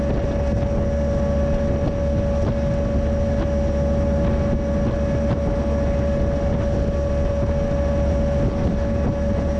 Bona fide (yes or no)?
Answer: yes